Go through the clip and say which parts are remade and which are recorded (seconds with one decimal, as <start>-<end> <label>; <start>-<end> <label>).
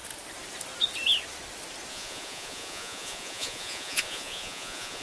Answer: 0.0-1.9 recorded; 1.9-5.0 remade